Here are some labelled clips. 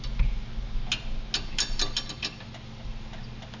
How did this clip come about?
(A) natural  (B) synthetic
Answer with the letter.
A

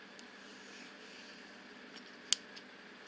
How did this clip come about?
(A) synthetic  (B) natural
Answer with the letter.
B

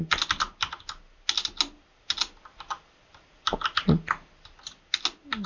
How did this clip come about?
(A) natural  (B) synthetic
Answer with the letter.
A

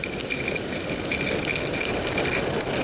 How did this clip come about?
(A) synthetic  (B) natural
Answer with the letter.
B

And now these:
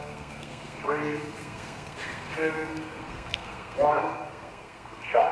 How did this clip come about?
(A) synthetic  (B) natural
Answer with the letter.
A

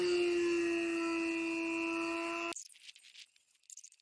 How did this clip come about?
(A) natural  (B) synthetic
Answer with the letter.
A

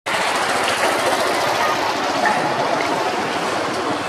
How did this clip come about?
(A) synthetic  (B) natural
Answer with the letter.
B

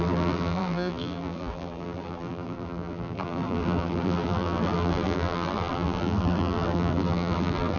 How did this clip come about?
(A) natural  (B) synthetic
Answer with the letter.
B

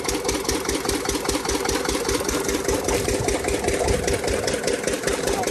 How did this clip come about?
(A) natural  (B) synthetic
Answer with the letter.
A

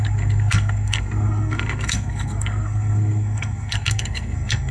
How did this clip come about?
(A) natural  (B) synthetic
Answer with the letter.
B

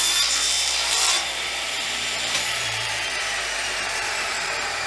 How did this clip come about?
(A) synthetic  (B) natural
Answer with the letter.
A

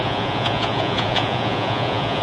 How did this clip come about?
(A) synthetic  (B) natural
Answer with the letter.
A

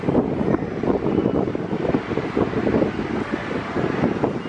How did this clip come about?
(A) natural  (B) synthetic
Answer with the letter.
A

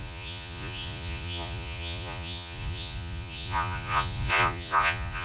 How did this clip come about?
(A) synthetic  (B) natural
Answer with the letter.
A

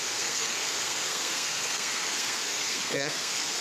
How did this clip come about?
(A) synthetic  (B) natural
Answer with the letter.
A